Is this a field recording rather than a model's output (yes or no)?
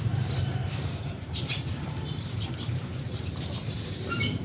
no